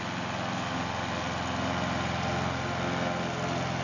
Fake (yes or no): no